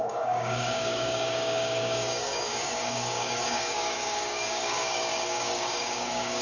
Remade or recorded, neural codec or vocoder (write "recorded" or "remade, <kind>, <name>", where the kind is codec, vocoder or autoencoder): remade, codec, DAC